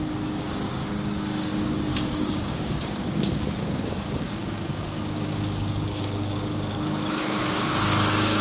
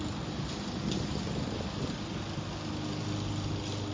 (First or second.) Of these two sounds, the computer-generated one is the first